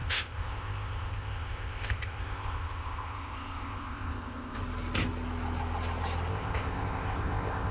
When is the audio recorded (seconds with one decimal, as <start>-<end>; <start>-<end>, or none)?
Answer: 4.6-6.3